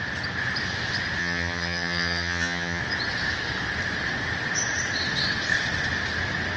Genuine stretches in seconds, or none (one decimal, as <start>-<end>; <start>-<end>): 0.0-1.2; 2.8-6.6